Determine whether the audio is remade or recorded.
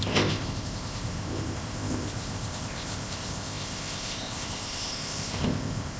remade